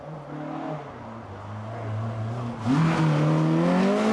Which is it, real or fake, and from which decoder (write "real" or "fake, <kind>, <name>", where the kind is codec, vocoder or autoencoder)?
real